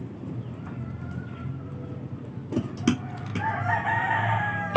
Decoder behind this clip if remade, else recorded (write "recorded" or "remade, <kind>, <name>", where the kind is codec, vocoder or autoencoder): recorded